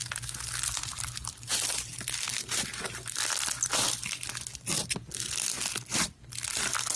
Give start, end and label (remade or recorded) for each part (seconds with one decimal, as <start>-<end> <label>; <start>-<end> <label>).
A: 0.0-7.0 recorded